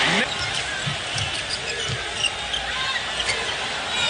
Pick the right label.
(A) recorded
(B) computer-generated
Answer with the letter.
A